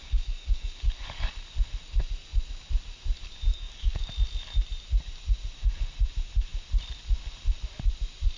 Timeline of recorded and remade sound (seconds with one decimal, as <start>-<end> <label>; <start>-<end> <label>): 0.0-1.3 remade; 1.3-3.5 recorded; 3.5-4.1 remade; 4.1-8.4 recorded